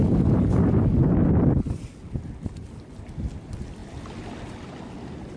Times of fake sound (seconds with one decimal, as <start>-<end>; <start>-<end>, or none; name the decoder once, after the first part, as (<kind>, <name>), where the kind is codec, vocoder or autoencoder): none